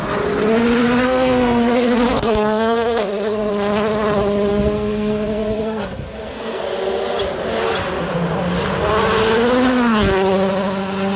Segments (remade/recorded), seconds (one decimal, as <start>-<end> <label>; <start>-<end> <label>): 0.0-0.8 recorded; 0.8-3.5 remade; 3.5-4.5 recorded; 4.5-6.6 remade; 6.6-11.2 recorded